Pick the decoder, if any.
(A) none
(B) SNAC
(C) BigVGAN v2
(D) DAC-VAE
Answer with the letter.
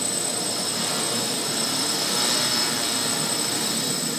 A